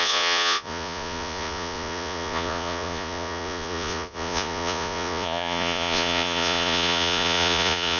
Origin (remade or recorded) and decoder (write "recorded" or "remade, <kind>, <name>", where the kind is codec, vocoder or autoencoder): remade, vocoder, Vocos